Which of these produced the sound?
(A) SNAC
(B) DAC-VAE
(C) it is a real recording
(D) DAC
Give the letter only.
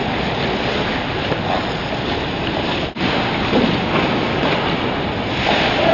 C